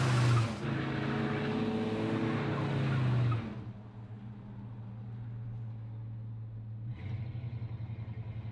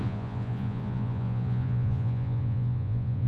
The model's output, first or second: second